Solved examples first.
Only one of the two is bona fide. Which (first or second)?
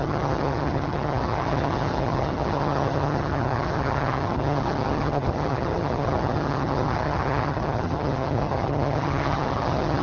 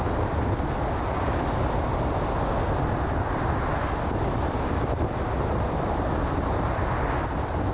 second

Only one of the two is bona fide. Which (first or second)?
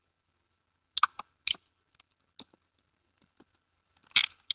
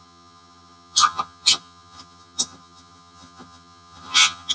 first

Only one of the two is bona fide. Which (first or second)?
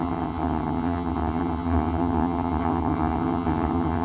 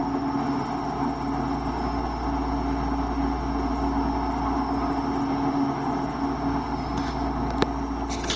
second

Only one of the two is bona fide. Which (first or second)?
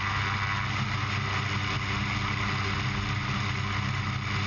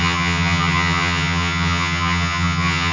first